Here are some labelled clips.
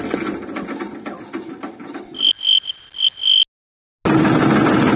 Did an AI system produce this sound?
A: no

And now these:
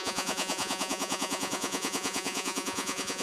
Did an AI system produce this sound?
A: yes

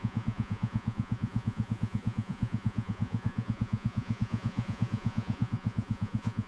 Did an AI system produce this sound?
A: yes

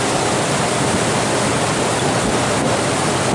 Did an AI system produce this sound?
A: no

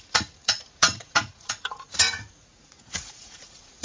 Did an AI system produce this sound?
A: yes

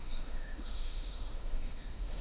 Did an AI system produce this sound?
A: yes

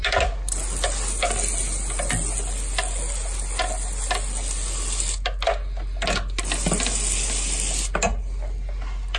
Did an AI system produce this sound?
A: no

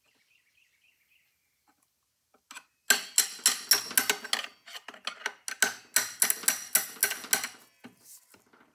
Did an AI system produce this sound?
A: no